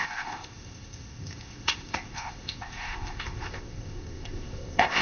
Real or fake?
fake